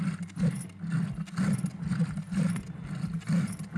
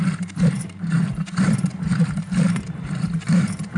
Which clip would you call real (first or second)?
first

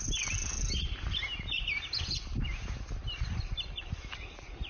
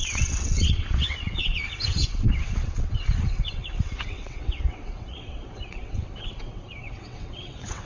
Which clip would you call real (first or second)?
first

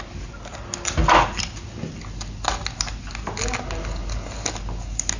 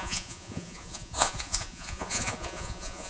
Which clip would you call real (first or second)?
first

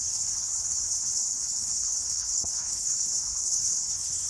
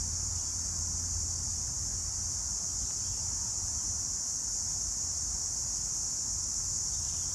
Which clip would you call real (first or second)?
second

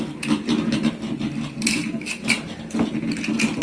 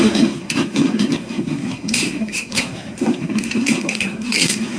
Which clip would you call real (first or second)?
first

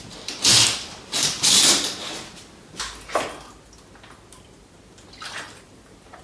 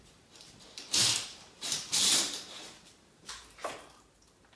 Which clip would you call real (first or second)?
first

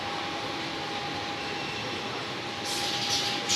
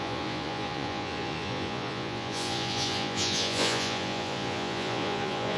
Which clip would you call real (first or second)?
first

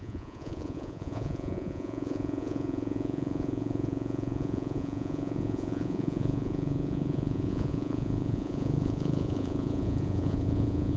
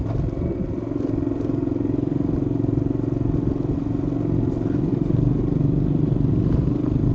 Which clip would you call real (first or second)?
second